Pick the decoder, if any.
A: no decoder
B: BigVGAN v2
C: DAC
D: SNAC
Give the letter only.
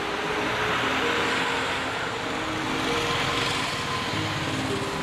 A